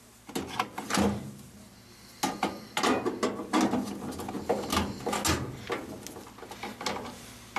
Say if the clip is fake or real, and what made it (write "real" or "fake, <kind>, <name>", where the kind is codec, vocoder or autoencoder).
real